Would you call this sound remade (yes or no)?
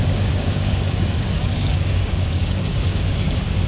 yes